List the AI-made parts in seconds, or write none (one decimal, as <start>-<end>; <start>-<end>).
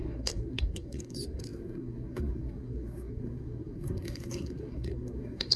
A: 0.0-5.6